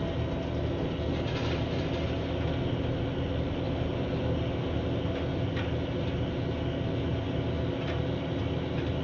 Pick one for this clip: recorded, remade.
recorded